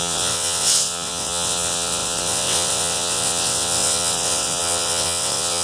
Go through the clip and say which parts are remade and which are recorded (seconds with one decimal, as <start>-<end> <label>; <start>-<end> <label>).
0.0-5.6 remade